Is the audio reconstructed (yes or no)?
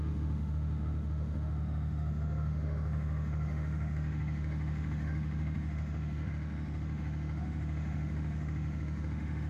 yes